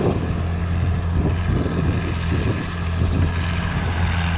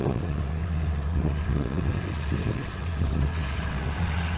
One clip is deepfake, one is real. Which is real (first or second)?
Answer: first